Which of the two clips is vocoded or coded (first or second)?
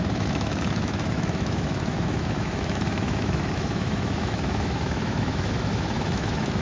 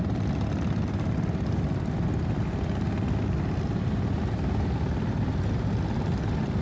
first